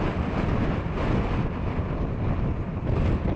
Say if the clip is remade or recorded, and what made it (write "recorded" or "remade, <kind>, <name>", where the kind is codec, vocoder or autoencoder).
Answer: recorded